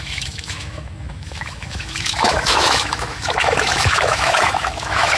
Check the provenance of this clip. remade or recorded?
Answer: remade